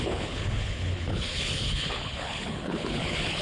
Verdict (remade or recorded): remade